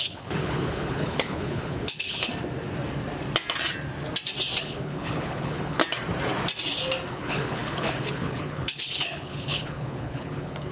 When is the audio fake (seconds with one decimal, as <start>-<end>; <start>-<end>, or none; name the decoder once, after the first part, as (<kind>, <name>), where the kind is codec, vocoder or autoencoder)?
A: 0.0-2.3 (codec, HILCodec); 4.6-5.8; 7.1-10.7